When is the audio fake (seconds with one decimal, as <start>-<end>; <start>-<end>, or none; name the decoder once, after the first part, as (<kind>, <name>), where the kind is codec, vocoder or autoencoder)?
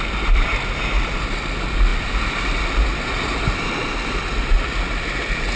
none